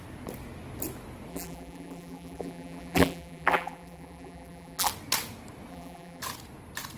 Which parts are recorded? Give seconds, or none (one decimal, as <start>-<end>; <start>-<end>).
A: 0.0-1.3; 4.9-5.7; 6.2-7.0